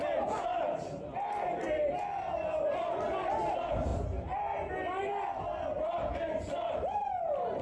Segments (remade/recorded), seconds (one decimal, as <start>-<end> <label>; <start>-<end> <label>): 0.0-3.9 remade; 3.9-6.1 recorded; 6.1-7.6 remade